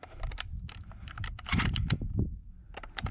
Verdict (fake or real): real